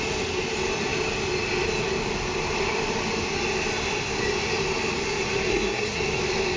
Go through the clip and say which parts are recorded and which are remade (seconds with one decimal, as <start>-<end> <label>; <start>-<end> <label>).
0.0-5.5 recorded; 5.5-6.0 remade; 6.0-6.6 recorded